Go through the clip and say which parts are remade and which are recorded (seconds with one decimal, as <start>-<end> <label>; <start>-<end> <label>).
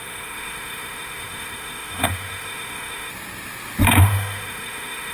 0.0-3.1 remade; 3.1-4.0 recorded; 4.0-5.1 remade